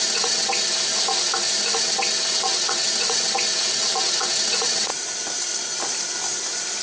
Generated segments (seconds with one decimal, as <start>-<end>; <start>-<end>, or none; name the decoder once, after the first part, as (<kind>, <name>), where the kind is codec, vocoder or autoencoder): 0.0-0.7 (vocoder, WaveNeXt); 1.8-4.9